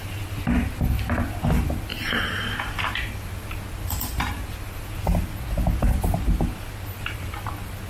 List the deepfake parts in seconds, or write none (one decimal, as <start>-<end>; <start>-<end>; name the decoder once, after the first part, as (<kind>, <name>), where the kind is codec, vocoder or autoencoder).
none